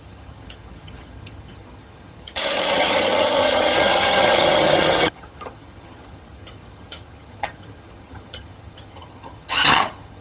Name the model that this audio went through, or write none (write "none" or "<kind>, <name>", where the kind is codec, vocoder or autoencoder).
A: vocoder, HiFi-GAN